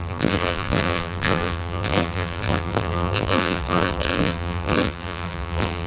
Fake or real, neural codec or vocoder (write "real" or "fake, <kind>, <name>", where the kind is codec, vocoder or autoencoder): fake, vocoder, BigVGAN v2